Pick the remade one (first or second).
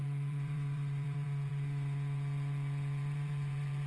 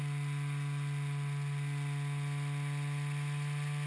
first